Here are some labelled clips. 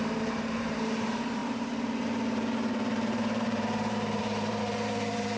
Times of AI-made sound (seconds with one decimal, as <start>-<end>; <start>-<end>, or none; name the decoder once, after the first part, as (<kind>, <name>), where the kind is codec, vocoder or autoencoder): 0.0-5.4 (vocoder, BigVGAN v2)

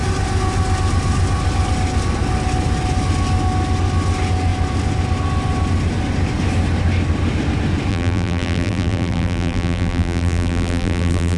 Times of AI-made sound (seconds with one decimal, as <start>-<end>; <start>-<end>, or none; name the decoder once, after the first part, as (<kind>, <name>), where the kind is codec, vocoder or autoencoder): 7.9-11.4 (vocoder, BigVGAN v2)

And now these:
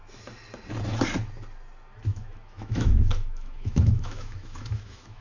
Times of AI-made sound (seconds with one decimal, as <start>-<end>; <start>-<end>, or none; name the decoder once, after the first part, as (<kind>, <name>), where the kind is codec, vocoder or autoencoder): 2.1-5.2 (autoencoder, DAC-VAE)

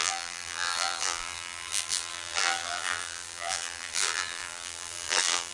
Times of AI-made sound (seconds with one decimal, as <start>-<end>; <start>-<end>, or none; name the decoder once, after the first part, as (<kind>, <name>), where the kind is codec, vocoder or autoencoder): 0.0-5.5 (vocoder, BigVGAN v2)